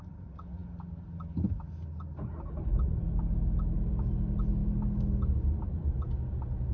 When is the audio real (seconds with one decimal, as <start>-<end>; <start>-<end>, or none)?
0.0-6.7